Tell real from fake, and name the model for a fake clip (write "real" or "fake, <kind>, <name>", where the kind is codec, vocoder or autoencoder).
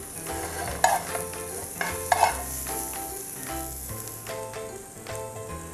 real